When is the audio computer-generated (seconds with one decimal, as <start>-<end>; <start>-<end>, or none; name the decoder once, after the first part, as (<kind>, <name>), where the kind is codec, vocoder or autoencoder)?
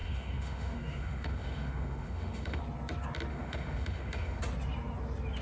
0.0-2.6 (autoencoder, DAC-VAE); 3.3-4.4